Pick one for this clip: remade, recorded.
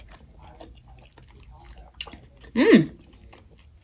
recorded